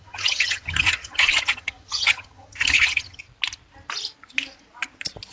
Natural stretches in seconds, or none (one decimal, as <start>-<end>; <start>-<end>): 3.2-5.3